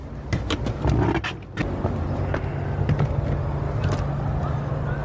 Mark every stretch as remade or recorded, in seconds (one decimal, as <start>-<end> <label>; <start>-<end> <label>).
0.0-5.0 recorded

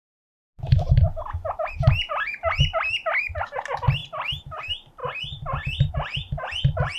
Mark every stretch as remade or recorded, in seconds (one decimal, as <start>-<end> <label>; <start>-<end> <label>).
0.0-7.0 recorded

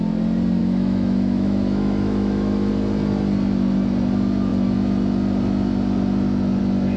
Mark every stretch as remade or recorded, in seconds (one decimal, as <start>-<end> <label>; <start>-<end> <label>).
0.0-0.6 recorded; 0.6-2.7 remade; 2.7-7.0 recorded

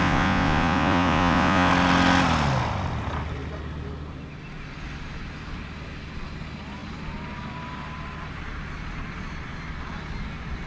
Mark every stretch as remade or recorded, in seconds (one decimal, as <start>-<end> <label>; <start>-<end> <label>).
0.0-1.7 remade; 1.7-10.7 recorded